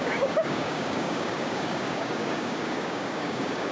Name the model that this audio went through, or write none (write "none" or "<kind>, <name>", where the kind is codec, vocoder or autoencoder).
codec, DAC